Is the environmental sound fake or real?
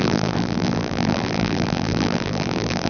fake